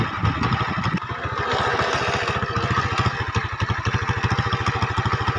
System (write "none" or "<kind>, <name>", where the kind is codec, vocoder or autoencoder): none